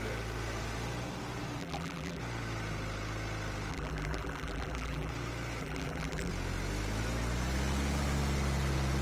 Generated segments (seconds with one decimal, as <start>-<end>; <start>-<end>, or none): 1.6-2.2; 3.7-5.1; 5.6-6.3